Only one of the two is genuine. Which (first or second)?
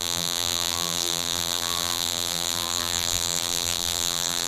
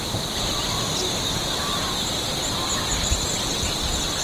second